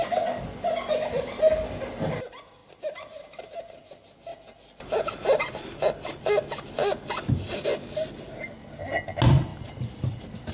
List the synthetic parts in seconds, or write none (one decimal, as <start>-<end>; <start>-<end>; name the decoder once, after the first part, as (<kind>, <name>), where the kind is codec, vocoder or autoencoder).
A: 2.6-3.5 (vocoder, BigVGAN v2); 9.5-10.0